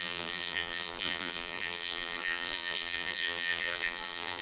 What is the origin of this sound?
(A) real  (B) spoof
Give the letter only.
B